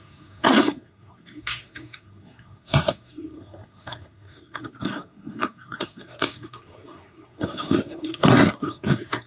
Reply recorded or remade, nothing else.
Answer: remade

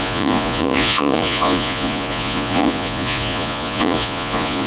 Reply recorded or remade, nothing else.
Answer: remade